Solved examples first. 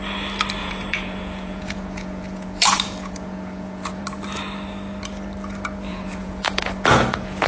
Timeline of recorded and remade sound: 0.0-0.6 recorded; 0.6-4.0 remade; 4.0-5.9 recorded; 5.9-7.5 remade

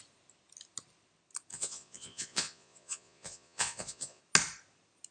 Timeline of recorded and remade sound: 0.0-1.5 recorded; 1.5-4.2 remade; 4.2-5.1 recorded